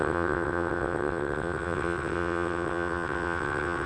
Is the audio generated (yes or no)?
yes